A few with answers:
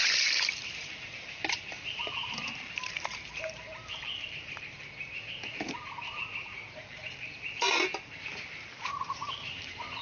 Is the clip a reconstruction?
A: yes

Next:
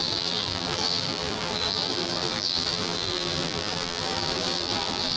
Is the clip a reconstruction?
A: yes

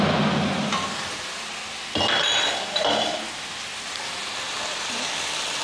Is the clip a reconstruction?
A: no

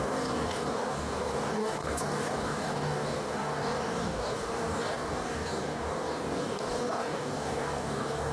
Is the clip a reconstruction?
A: yes